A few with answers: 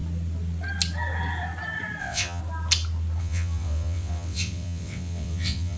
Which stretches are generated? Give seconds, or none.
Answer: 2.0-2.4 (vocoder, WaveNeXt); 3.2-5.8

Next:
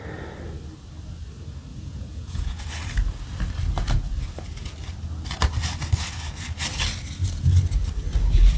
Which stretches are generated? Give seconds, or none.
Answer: 1.7-2.6 (vocoder, Vocos)

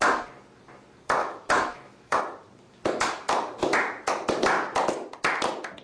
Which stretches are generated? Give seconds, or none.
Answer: 1.2-2.2 (autoencoder, DAC-VAE)

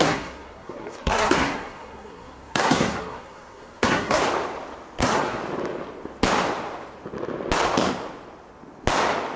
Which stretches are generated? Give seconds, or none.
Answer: 0.0-4.2 (codec, SNAC); 5.0-5.4

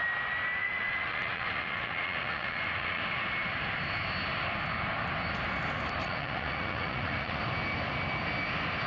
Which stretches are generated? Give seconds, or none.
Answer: 0.6-3.0 (vocoder, Vocos); 6.0-7.4

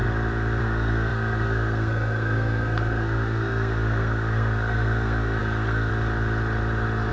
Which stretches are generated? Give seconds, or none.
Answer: 0.6-5.9 (codec, SNAC)

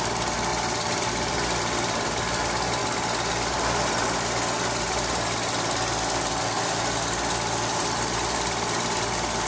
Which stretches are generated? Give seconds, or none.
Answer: none